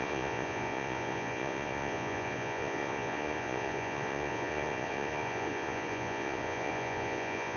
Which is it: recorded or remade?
remade